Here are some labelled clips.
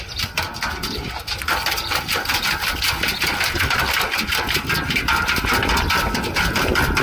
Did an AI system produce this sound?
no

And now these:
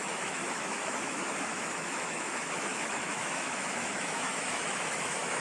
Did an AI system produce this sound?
yes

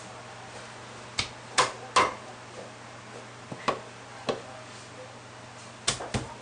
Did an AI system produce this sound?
no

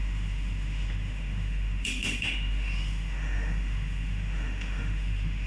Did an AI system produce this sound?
yes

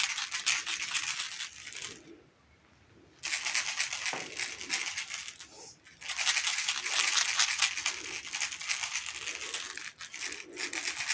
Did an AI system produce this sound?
no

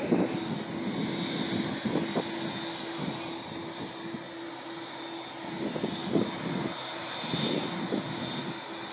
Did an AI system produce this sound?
no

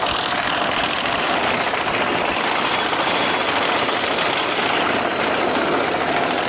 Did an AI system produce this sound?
no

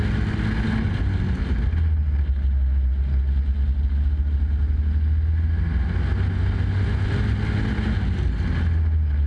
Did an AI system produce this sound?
no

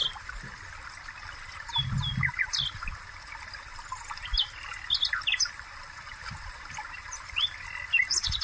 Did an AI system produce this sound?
no